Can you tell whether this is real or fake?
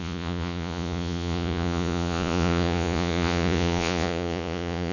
fake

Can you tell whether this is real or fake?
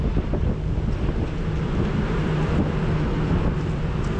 real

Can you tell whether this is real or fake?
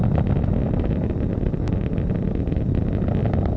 real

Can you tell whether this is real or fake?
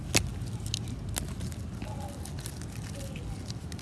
real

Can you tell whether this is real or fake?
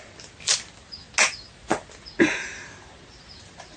real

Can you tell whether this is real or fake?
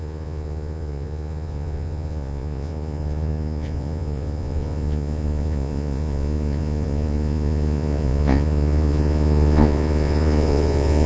fake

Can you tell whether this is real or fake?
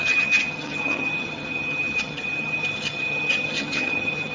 fake